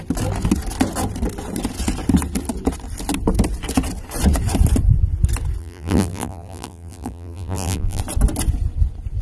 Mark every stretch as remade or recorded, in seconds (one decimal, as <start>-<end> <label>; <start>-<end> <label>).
0.0-5.6 recorded; 5.6-8.0 remade; 8.0-9.2 recorded